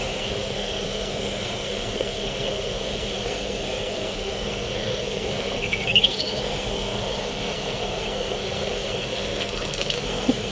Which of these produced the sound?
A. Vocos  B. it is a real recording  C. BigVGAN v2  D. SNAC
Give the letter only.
D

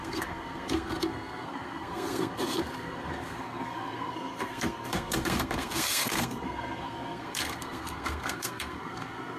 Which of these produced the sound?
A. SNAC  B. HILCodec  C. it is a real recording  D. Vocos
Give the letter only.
A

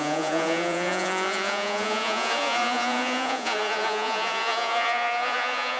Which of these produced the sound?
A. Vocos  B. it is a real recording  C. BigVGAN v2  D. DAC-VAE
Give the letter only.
A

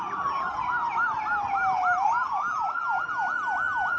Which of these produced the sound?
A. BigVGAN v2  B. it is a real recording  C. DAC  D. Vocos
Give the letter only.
B